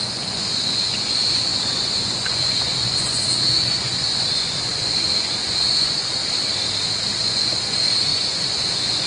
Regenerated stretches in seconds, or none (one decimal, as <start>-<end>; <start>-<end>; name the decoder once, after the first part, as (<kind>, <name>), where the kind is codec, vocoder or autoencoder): 0.0-6.2 (vocoder, Vocos); 7.2-9.1